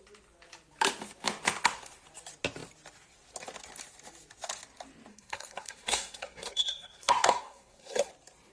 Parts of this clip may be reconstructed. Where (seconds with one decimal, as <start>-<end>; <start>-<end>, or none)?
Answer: 5.1-8.1